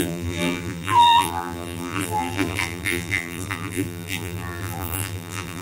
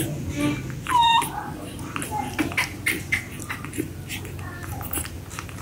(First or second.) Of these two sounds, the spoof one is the first